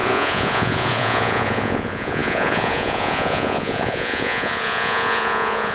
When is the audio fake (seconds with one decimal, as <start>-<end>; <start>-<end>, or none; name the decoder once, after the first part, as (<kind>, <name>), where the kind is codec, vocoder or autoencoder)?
0.0-5.7 (vocoder, Vocos)